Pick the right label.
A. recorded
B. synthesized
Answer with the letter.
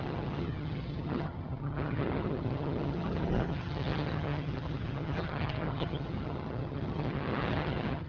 B